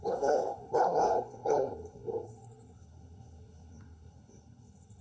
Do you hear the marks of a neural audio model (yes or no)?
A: yes